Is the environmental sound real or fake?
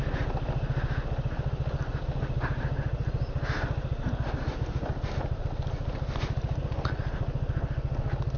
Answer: real